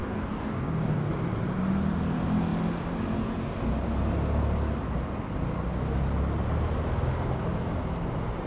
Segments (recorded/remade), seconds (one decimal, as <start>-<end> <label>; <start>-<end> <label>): 0.0-1.1 remade; 1.1-8.5 recorded